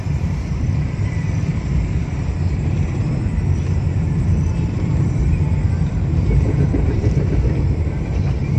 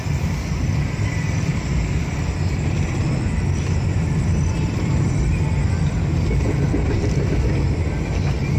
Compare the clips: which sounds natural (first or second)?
second